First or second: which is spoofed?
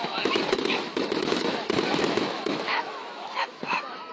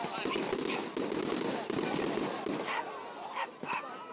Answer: first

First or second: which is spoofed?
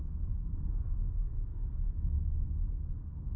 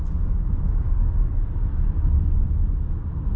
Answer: first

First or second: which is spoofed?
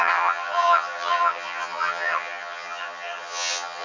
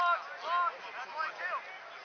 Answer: first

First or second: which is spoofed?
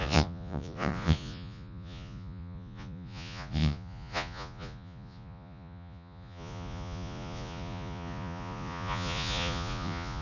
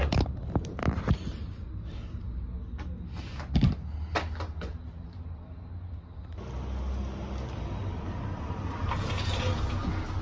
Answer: first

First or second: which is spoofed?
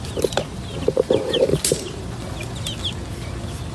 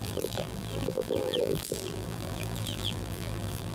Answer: second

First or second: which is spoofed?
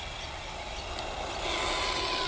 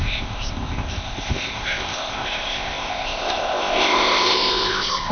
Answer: second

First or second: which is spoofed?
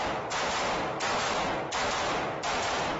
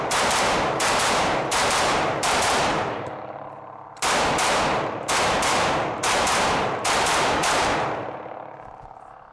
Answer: second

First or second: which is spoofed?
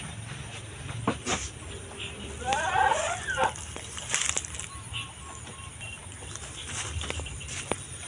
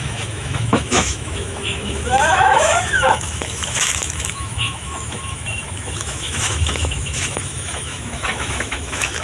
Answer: second